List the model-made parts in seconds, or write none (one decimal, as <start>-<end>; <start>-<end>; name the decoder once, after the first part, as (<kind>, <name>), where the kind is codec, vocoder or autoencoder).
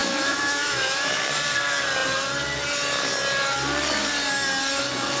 0.0-1.2 (autoencoder, DAC-VAE)